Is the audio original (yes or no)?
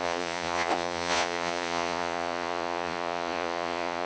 no